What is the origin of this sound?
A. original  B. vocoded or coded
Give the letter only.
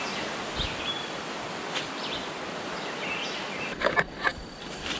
A